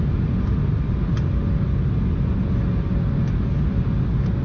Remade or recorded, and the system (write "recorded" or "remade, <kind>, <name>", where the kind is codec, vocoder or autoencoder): recorded